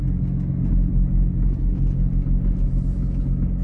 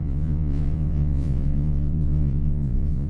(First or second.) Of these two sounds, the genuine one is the first